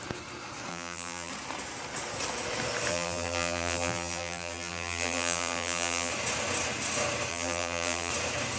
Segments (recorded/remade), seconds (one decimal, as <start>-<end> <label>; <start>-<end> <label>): 0.0-0.7 recorded; 0.7-1.3 remade; 1.3-2.9 recorded; 2.9-6.1 remade; 6.1-7.3 recorded; 7.3-8.1 remade; 8.1-8.6 recorded

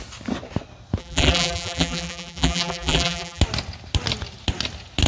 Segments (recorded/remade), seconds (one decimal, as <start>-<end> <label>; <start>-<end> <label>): 0.0-1.0 recorded; 1.0-3.4 remade; 3.4-5.1 recorded

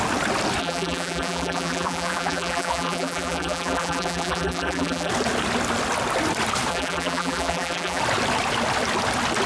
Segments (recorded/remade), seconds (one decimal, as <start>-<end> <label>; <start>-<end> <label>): 0.0-0.6 recorded; 0.6-5.1 remade; 5.1-6.7 recorded; 6.7-8.0 remade; 8.0-9.5 recorded

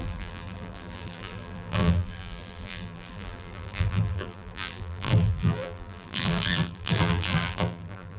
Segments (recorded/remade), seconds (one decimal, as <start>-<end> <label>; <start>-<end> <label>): 0.0-8.2 remade

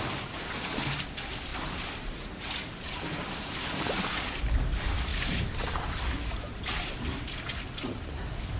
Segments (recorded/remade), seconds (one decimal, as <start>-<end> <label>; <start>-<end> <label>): 0.0-1.5 recorded; 1.5-4.0 remade; 4.0-5.1 recorded; 5.1-6.6 remade; 6.6-8.6 recorded

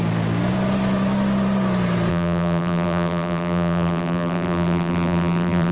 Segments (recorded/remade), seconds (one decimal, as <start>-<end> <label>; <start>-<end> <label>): 0.0-2.1 recorded; 2.1-5.7 remade

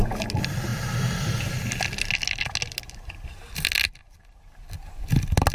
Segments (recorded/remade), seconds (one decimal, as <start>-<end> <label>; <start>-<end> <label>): 0.0-5.5 recorded

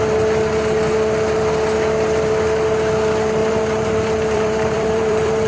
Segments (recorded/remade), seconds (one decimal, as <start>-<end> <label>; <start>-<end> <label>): 0.0-3.4 recorded; 3.4-5.5 remade